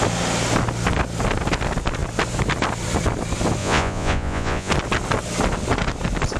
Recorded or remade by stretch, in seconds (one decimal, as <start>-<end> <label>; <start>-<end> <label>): 0.0-3.6 recorded; 3.6-4.7 remade; 4.7-6.4 recorded